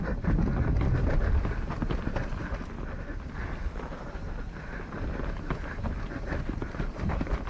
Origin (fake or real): real